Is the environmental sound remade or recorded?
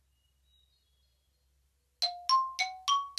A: recorded